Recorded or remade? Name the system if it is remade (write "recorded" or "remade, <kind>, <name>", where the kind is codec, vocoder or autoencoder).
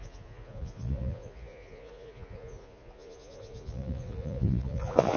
remade, vocoder, Vocos